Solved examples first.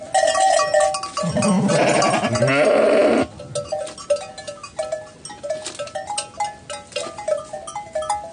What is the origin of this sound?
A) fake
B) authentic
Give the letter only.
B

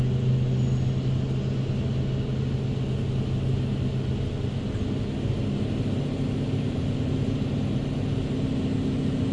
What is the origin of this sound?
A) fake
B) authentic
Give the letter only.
B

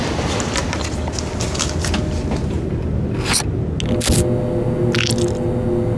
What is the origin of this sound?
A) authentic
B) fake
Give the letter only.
A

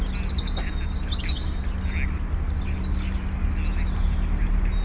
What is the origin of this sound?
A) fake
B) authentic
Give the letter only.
B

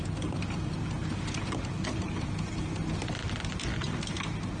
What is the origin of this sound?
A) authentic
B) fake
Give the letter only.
A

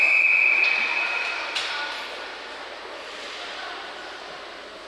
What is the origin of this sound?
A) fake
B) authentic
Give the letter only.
B